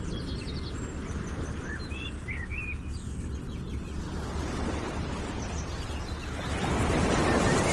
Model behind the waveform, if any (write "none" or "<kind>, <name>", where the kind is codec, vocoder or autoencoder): none